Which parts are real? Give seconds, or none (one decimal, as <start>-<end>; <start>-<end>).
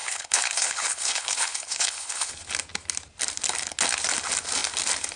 2.3-5.2